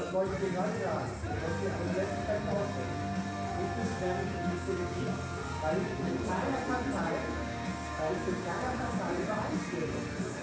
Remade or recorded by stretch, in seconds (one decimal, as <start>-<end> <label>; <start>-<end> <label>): 0.0-3.8 recorded; 3.8-5.0 remade; 5.0-7.2 recorded; 7.2-9.1 remade; 9.1-10.4 recorded